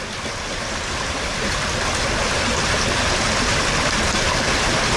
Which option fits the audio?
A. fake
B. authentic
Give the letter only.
B